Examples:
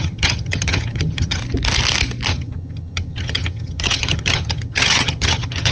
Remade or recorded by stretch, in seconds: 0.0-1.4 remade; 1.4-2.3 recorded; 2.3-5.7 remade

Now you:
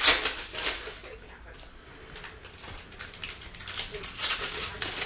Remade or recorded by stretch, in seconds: 0.0-3.9 recorded; 3.9-5.1 remade

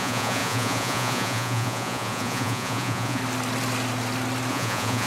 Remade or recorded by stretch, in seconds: 0.0-3.2 remade; 3.2-4.5 recorded; 4.5-5.1 remade

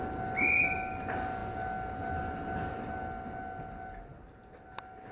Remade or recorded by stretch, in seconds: 0.0-5.1 recorded

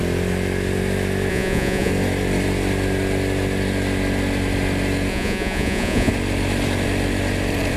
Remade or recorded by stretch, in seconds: 0.0-1.3 recorded; 1.3-1.9 remade; 1.9-5.1 recorded; 5.1-6.1 remade; 6.1-7.8 recorded